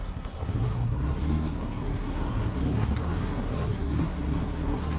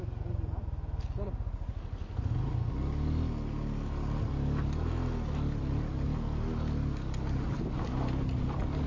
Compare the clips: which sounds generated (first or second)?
first